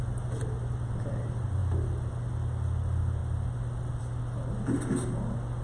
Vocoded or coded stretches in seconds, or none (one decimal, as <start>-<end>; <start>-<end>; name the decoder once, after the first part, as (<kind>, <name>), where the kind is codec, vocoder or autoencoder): 1.6-2.1 (vocoder, BigVGAN v2); 3.2-4.0